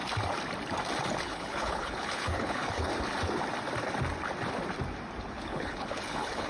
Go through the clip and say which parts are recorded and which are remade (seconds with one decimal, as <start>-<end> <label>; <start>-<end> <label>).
0.0-1.2 recorded; 1.2-2.9 remade; 2.9-5.3 recorded; 5.3-6.5 remade